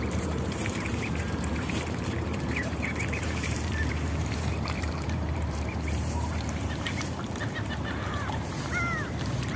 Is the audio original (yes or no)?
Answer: no